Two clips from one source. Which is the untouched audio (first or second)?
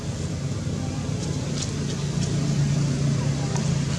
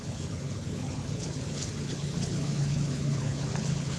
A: first